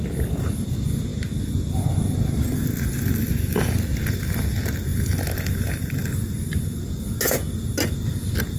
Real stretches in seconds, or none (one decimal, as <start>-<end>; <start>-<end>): 0.0-8.6